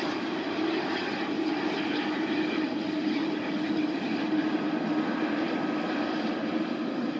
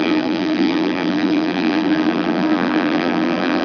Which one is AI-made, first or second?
second